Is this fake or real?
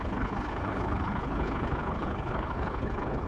fake